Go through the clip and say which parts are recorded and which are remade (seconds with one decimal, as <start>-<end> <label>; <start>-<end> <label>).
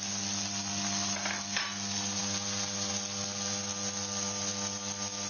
0.0-5.3 recorded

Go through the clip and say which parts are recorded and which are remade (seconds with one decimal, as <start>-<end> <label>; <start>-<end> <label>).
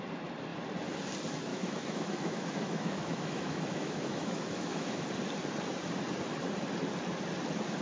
0.0-1.5 recorded; 1.5-5.1 remade; 5.1-7.8 recorded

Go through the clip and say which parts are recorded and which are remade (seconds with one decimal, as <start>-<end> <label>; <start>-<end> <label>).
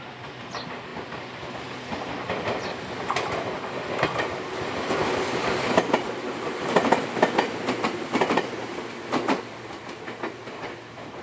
0.0-11.2 recorded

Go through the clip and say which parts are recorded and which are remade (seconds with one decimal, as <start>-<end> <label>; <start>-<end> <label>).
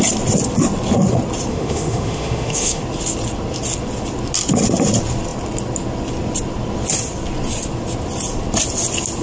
0.0-1.5 recorded; 1.5-2.8 remade; 2.8-9.2 recorded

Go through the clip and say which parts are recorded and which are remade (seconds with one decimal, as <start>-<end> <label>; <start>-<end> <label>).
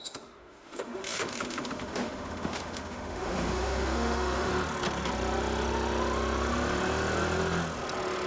0.0-4.5 remade; 4.5-8.3 recorded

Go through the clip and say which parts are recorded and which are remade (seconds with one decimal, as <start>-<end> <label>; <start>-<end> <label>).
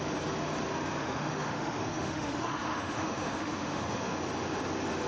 0.0-1.0 recorded; 1.0-4.1 remade; 4.1-5.1 recorded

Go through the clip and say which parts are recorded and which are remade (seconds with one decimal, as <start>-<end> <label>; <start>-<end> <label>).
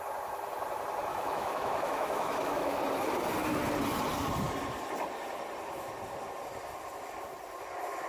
0.0-1.1 recorded; 1.1-2.8 remade; 2.8-8.1 recorded